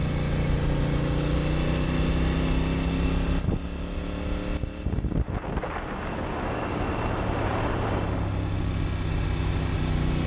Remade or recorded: recorded